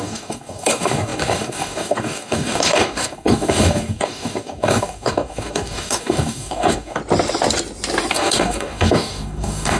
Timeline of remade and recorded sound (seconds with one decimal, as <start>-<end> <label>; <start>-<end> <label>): 0.0-7.0 remade; 7.0-8.1 recorded; 8.1-9.8 remade